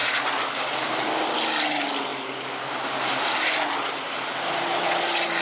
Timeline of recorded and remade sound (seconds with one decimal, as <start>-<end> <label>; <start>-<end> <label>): 0.0-5.4 recorded